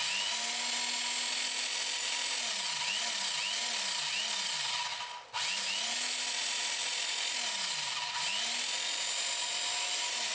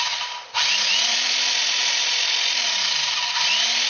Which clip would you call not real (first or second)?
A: second